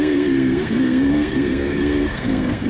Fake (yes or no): yes